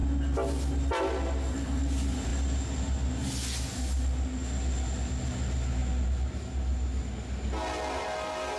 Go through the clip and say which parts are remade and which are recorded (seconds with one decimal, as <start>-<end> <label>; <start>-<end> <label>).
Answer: 0.0-8.6 recorded